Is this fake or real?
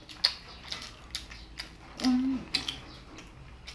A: real